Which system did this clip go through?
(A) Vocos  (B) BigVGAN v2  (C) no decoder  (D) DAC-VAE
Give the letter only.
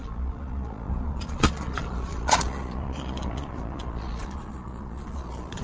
A